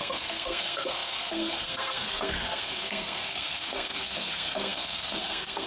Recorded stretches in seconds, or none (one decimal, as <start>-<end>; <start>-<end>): none